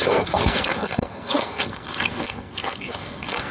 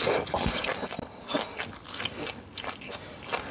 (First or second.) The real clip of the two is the second